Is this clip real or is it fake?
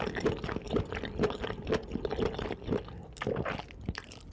real